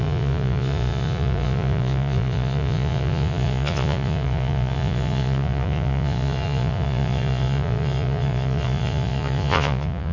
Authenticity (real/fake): fake